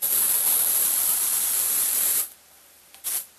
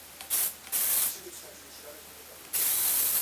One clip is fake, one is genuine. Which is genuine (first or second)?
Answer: second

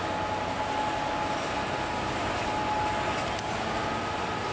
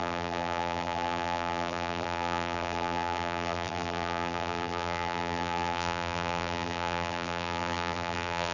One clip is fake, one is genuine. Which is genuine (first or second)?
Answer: first